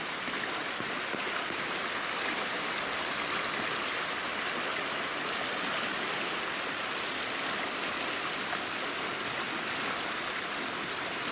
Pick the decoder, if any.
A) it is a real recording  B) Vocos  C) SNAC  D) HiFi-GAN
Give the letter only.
A